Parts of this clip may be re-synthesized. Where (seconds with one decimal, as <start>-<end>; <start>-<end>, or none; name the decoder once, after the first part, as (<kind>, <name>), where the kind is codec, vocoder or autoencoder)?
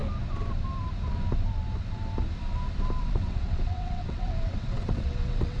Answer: 3.0-5.6 (vocoder, WaveNeXt)